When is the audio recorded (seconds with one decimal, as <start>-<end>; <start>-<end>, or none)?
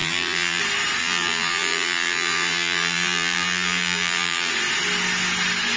0.6-1.0; 4.5-5.8